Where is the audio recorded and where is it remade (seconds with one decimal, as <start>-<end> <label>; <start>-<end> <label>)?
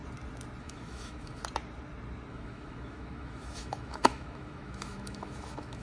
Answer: 0.0-0.6 recorded; 0.6-1.4 remade; 1.4-2.3 recorded; 2.3-5.8 remade